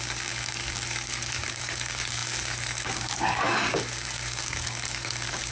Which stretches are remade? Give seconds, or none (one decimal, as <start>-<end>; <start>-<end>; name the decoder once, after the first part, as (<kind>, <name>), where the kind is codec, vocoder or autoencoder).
0.0-5.5 (codec, DAC)